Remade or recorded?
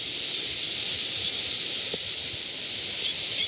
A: remade